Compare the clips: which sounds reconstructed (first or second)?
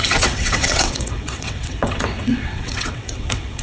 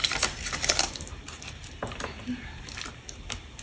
first